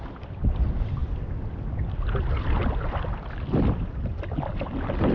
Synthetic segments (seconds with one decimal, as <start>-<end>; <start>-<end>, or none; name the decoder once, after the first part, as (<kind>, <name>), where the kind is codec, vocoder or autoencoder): none